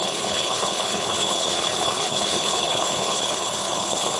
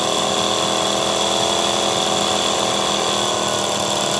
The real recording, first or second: second